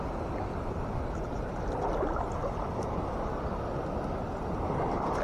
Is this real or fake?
real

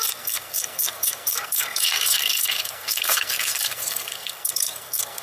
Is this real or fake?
fake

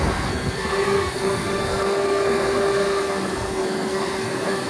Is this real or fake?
fake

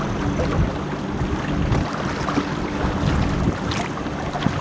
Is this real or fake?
real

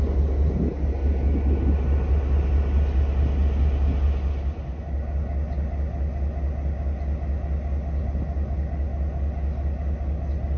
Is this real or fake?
real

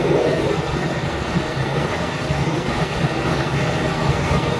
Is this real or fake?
fake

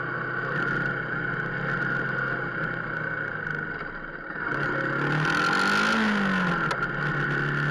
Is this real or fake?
real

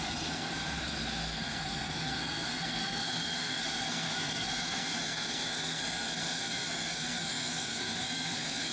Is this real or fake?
fake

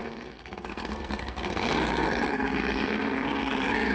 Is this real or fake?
fake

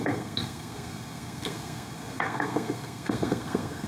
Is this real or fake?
fake